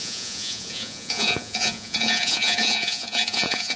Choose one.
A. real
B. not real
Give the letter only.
B